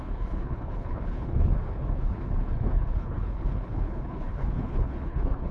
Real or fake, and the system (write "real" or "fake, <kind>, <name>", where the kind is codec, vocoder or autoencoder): fake, codec, HILCodec